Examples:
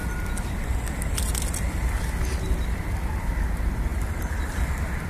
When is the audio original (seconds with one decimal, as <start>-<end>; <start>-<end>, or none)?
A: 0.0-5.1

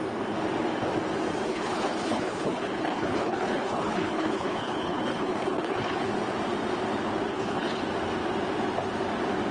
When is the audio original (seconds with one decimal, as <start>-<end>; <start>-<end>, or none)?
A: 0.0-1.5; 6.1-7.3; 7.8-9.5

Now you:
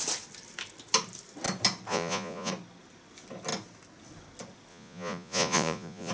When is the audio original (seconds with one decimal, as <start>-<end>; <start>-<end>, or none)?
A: 0.0-1.9; 2.5-4.7

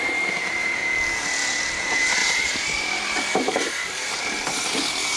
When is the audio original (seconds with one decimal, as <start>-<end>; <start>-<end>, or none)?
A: 0.8-1.6